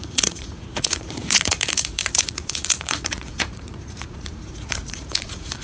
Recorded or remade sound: remade